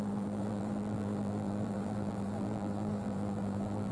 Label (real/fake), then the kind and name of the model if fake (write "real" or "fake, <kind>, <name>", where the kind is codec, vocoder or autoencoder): fake, vocoder, BigVGAN v2